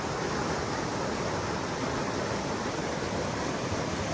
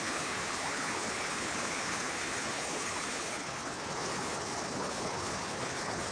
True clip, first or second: first